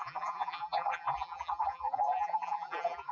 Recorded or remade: remade